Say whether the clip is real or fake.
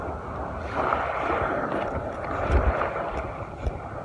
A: real